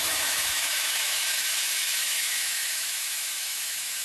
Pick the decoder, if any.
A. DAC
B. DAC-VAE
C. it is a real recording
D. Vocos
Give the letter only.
B